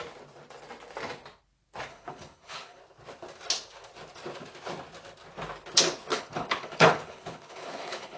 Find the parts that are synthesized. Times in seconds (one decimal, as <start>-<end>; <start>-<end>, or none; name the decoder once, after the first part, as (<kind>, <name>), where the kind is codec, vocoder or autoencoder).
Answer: 1.9-2.8 (codec, HILCodec); 6.1-8.2